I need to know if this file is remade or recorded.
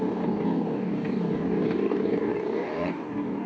remade